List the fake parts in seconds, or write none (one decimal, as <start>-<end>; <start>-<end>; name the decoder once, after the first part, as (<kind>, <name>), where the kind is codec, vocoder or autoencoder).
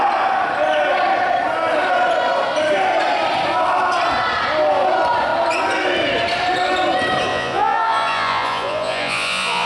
7.3-9.7 (vocoder, Vocos)